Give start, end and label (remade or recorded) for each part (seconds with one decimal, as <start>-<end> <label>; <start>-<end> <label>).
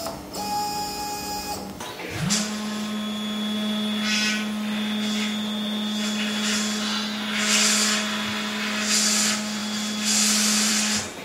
0.0-11.2 recorded